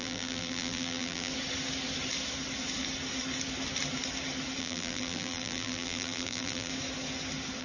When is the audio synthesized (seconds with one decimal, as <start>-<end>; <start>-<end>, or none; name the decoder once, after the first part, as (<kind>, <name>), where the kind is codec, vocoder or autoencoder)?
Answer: 0.0-1.3 (vocoder, BigVGAN v2); 4.6-6.7